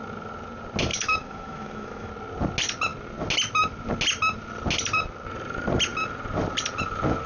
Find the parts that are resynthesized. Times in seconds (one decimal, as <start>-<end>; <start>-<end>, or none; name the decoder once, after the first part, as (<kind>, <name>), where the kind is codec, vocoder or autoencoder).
0.9-2.1 (autoencoder, DAC-VAE)